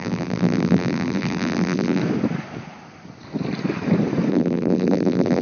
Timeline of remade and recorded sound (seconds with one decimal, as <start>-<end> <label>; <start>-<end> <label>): 0.0-2.0 remade; 2.0-4.3 recorded; 4.3-5.4 remade